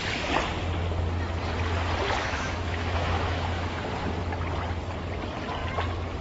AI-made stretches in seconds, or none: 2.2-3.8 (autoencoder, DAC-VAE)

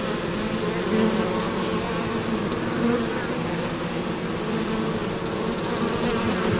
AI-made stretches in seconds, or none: none